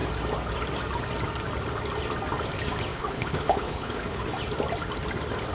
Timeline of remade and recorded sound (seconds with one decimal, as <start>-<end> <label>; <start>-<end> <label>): 0.0-2.9 recorded; 2.9-4.2 remade; 4.2-5.5 recorded